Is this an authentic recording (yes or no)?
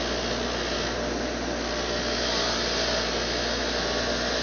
yes